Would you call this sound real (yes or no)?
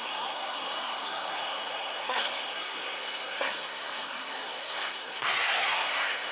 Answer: no